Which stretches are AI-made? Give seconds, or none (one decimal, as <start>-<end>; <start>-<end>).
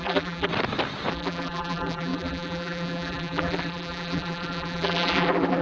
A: 0.0-0.5; 1.1-5.6